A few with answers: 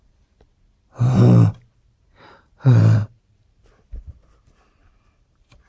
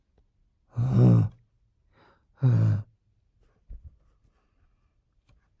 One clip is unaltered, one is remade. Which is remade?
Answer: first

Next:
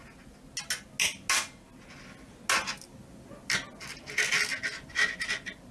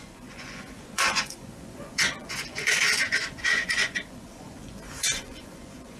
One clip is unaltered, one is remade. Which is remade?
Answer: second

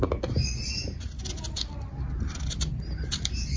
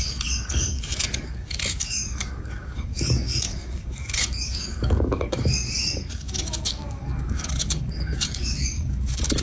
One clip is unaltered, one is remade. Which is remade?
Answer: second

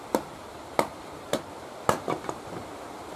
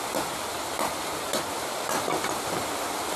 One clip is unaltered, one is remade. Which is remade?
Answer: first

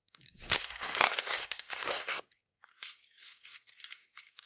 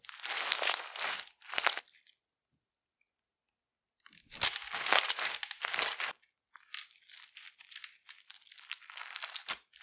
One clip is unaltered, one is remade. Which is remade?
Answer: first